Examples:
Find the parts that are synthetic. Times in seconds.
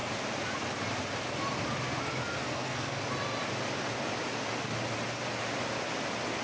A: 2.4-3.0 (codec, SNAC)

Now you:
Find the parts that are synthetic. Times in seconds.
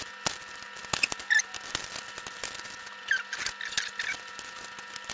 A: none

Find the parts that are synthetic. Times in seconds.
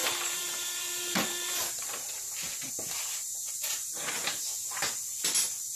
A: 0.0-2.7 (vocoder, BigVGAN v2); 3.8-4.4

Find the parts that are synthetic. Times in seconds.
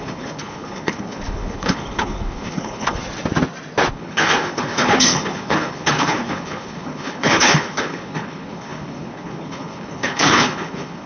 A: 0.0-3.0 (codec, HILCodec); 3.9-11.1